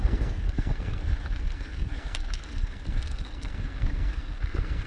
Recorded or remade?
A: remade